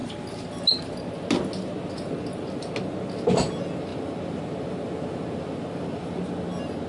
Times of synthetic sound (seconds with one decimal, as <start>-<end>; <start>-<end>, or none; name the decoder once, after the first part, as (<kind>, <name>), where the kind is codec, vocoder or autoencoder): none